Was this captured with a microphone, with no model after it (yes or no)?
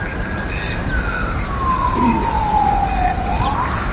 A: yes